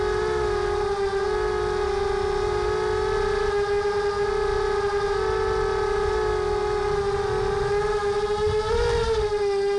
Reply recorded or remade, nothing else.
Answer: recorded